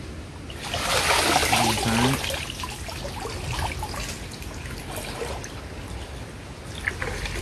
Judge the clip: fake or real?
real